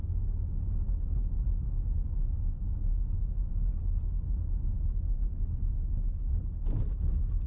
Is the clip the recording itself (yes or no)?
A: yes